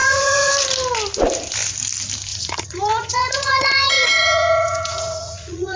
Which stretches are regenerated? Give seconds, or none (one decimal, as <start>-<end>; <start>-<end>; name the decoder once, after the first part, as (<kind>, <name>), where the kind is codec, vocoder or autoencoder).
0.0-0.5 (vocoder, Vocos); 2.3-5.8